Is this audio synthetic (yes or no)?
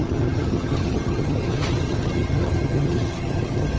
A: yes